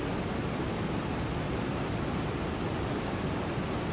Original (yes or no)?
yes